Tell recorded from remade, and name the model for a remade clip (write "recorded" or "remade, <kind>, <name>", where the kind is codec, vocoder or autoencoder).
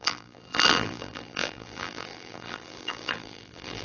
remade, vocoder, BigVGAN v2